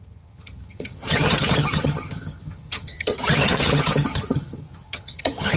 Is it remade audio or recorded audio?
remade